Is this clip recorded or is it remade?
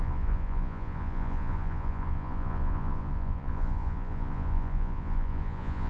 remade